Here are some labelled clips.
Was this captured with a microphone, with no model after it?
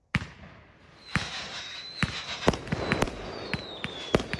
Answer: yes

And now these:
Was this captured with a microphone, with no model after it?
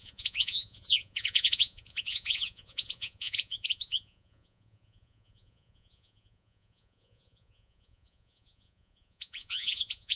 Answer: no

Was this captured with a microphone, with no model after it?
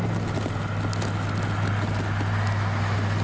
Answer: yes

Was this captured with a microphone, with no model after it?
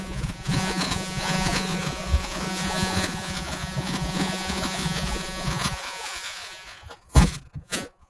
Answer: no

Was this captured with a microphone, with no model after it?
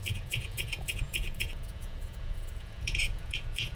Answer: no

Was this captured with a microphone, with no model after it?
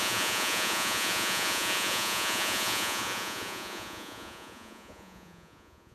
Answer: no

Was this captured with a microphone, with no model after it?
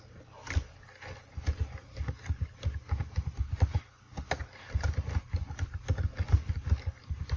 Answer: yes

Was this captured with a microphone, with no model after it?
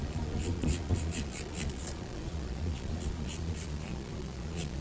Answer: no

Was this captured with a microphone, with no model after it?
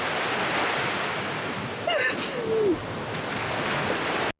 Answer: yes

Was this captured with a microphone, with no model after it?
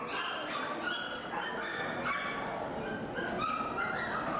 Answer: yes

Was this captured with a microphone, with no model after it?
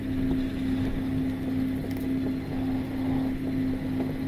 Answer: yes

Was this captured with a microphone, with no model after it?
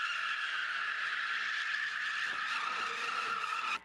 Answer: yes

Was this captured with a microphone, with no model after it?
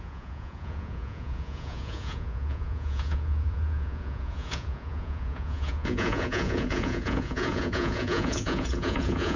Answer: no